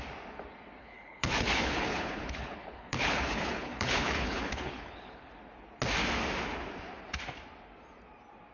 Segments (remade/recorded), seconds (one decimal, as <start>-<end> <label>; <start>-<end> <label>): 0.0-0.8 recorded; 0.8-5.3 remade; 5.3-8.5 recorded